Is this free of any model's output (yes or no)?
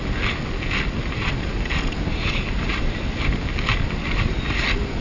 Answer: yes